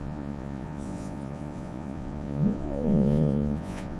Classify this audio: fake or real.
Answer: fake